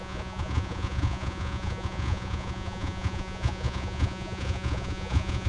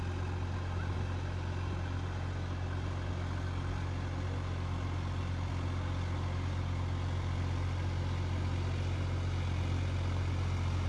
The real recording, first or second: second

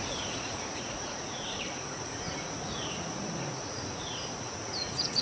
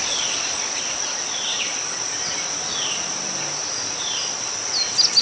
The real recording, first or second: second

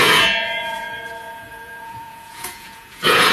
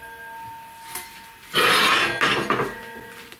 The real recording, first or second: second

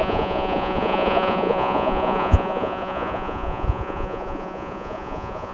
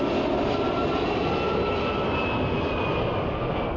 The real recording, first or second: second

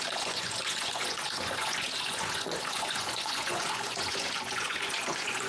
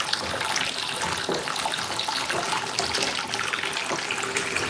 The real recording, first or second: second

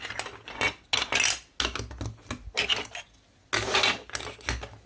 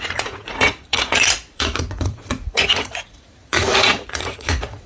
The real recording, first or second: first